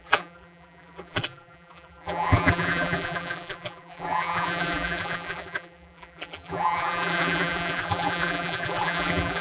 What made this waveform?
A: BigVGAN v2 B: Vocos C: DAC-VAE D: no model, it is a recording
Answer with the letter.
A